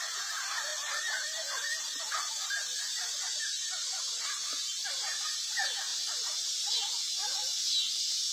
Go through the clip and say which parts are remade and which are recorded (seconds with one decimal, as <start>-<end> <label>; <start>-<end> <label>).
0.0-0.7 recorded; 0.7-2.0 remade; 2.0-4.7 recorded; 4.7-5.2 remade; 5.2-5.9 recorded; 5.9-7.9 remade; 7.9-8.3 recorded